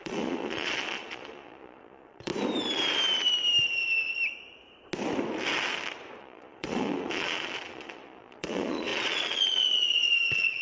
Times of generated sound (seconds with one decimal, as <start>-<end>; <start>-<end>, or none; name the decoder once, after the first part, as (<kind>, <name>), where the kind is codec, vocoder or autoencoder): 0.0-2.3 (vocoder, Vocos); 6.2-10.6

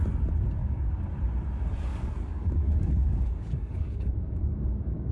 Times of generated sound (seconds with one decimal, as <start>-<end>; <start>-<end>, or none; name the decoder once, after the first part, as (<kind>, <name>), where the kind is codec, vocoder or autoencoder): 0.6-1.1 (codec, DAC); 1.9-5.1

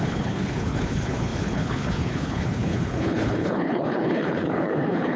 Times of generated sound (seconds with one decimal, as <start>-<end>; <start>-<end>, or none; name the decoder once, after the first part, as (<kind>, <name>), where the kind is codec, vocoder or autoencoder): 0.0-5.2 (codec, HILCodec)

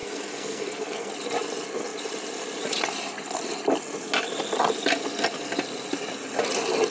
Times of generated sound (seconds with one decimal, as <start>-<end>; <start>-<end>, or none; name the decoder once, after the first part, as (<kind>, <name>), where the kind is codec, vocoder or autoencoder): 0.0-1.1 (codec, SNAC)